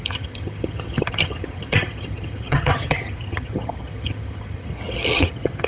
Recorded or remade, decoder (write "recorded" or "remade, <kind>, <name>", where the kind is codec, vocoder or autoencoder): remade, vocoder, HiFi-GAN